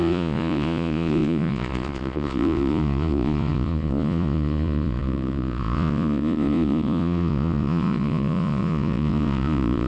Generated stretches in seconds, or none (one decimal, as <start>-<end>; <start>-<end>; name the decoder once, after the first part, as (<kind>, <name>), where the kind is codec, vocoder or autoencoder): 0.0-9.9 (vocoder, Vocos)